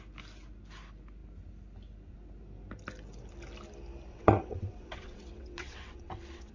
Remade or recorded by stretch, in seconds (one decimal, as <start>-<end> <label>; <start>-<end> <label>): 0.0-4.1 recorded; 4.1-6.5 remade